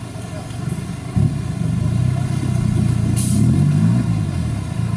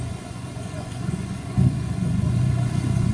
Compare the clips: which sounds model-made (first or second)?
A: second